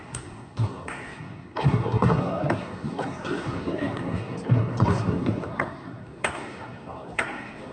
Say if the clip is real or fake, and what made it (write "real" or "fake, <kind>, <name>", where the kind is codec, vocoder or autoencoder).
fake, codec, SNAC